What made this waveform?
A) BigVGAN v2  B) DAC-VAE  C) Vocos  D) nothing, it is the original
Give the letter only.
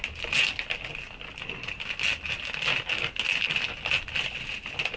D